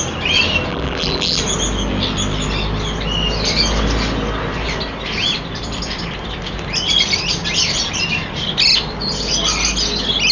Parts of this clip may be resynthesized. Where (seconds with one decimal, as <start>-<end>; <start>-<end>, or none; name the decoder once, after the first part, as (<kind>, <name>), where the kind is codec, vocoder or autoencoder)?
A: 0.7-1.4 (vocoder, BigVGAN v2)